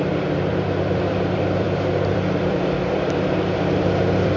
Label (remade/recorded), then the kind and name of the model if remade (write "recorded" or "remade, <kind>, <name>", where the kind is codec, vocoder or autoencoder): remade, vocoder, BigVGAN v2